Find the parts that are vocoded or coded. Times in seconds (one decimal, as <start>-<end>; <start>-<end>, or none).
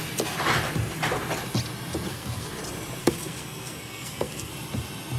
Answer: 2.1-2.6; 3.0-4.5